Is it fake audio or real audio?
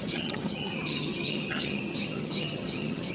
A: fake